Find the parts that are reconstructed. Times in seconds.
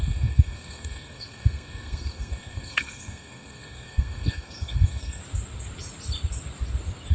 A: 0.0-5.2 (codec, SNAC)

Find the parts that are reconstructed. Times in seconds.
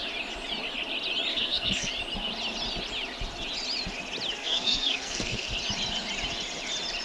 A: 1.3-1.9 (codec, SNAC); 4.4-5.5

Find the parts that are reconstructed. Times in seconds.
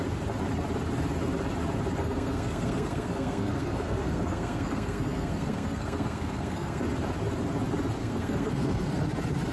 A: 2.0-6.8 (codec, SNAC); 8.0-9.0